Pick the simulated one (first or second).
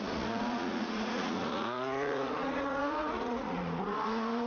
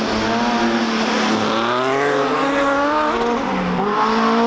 first